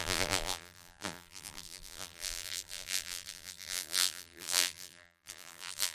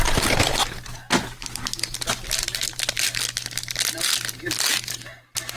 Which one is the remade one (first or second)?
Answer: first